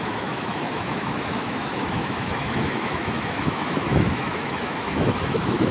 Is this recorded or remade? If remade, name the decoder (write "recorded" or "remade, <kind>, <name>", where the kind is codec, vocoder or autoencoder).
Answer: remade, autoencoder, DAC-VAE